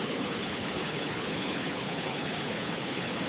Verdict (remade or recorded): remade